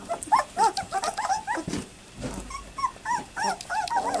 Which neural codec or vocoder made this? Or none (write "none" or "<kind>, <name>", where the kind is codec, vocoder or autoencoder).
none